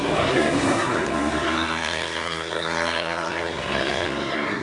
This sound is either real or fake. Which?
fake